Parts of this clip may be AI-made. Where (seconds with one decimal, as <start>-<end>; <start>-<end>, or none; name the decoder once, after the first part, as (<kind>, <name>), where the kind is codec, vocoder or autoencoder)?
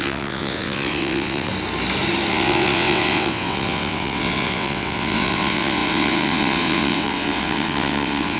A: 0.0-1.5 (vocoder, WaveNeXt); 2.3-8.4